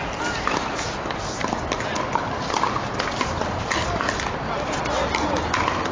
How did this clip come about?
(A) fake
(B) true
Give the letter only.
B